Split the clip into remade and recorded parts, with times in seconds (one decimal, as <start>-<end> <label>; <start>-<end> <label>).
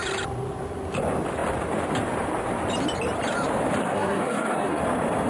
0.0-3.8 recorded; 3.8-4.8 remade; 4.8-5.3 recorded